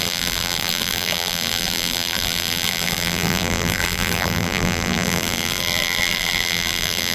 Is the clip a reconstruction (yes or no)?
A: yes